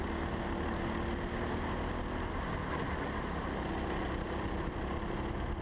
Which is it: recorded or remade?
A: recorded